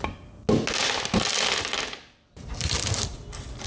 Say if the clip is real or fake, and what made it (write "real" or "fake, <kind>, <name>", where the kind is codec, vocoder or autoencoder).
real